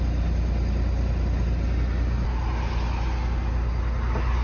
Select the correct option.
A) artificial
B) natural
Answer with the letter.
B